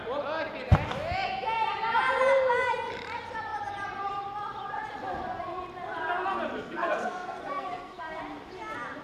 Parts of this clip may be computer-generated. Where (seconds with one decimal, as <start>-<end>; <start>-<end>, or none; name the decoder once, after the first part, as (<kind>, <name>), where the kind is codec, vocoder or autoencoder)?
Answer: 6.6-8.2 (codec, SNAC)

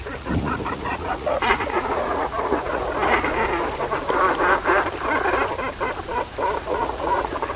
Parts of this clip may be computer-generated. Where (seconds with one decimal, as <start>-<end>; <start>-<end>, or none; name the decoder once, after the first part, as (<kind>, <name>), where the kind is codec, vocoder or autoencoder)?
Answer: 0.0-2.8 (vocoder, Vocos); 6.6-7.6